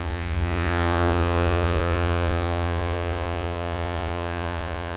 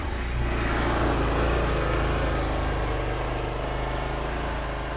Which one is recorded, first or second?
second